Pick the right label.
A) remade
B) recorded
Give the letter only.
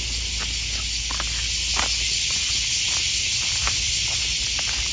B